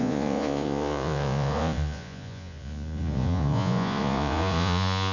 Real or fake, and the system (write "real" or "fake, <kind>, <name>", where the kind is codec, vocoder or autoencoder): fake, vocoder, Vocos